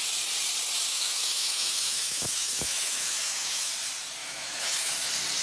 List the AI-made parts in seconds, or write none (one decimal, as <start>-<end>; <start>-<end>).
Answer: 0.9-3.7; 4.2-4.9